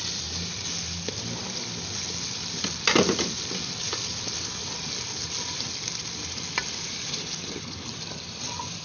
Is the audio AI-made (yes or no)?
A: no